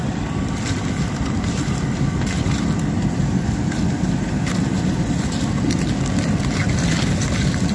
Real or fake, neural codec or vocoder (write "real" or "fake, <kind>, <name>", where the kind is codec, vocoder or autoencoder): real